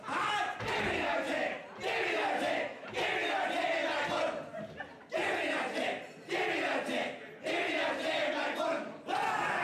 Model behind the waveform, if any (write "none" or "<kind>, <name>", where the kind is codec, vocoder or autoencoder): none